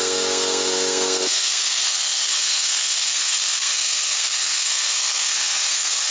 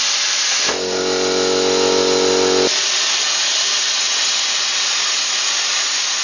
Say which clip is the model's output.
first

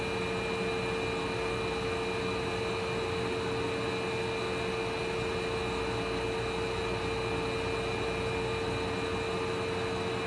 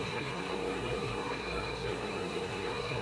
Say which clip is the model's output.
second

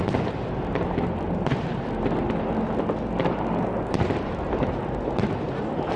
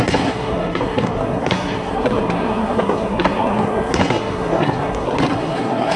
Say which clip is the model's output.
second